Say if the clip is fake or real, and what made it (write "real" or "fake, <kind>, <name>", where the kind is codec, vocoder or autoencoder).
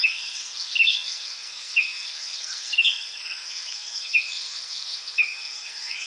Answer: fake, codec, SNAC